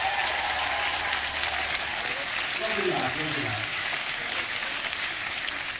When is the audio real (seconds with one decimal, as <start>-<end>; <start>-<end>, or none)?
0.0-3.6; 5.3-5.8